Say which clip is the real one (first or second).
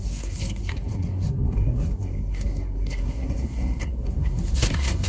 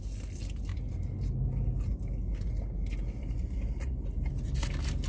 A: second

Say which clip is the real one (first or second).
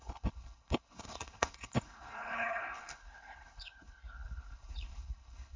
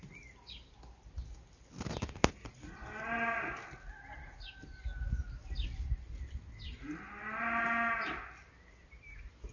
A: second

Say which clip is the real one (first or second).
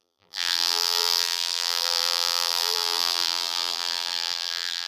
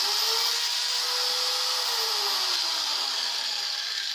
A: second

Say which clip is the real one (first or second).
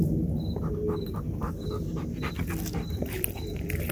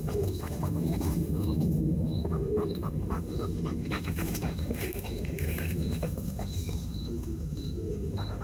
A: first